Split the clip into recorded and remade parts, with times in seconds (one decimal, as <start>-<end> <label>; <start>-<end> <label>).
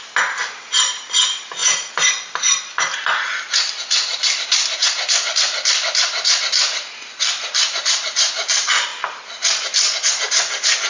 0.0-1.6 remade; 1.6-2.2 recorded; 2.2-4.8 remade; 4.8-6.4 recorded; 6.4-8.9 remade; 8.9-10.1 recorded; 10.1-10.9 remade